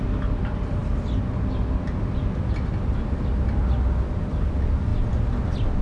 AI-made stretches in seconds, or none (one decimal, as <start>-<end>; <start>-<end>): none